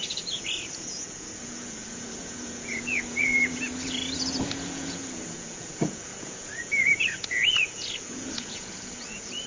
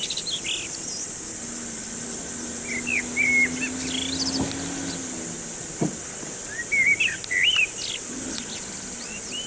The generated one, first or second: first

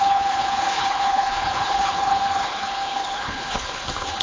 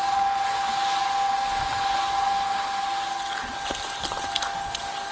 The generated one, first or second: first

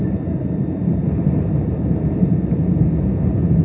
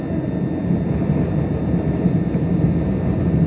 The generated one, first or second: first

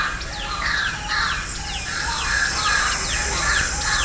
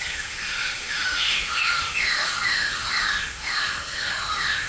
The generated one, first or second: second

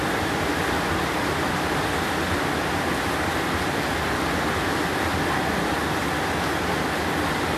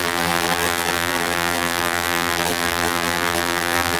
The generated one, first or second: second